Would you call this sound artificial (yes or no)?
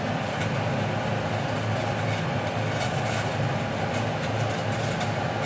no